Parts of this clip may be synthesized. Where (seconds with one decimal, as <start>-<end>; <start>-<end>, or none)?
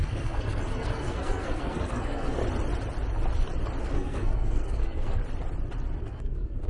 0.0-2.4; 3.8-5.2; 6.0-6.7